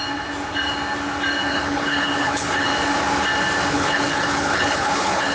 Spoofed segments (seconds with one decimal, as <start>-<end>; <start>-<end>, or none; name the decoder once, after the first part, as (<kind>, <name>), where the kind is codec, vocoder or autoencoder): 1.5-2.7 (codec, HILCodec); 3.7-5.3

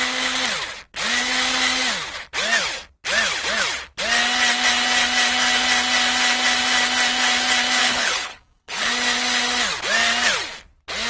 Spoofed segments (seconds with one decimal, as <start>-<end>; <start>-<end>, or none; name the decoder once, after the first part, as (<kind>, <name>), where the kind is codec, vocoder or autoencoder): 7.8-8.9 (codec, HILCodec)

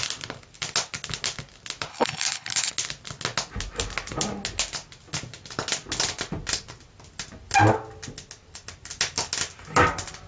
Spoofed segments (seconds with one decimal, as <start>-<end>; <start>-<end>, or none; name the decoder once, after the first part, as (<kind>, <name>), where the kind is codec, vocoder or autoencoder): 1.9-2.7 (codec, HILCodec)

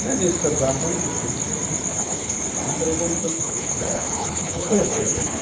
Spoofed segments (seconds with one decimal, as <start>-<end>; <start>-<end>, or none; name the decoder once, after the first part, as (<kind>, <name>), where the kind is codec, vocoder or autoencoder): 1.9-2.4 (codec, HILCodec); 3.2-5.4

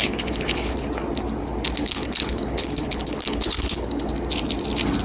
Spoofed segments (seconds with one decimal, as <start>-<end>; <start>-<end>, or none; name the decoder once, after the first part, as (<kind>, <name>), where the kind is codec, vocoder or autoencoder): 0.0-0.8 (codec, HILCodec); 1.8-4.1